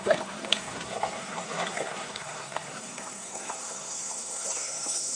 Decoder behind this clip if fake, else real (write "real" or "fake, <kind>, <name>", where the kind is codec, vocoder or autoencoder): fake, codec, SNAC